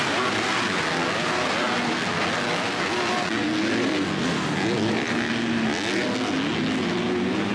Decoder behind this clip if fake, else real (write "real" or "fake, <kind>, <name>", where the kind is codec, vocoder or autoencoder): real